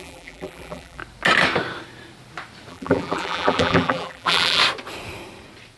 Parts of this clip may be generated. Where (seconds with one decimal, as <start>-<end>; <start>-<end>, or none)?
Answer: 0.0-1.0; 2.7-4.6